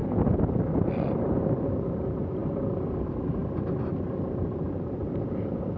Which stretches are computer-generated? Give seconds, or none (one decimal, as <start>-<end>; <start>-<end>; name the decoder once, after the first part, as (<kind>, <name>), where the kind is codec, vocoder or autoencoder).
0.0-5.8 (vocoder, BigVGAN v2)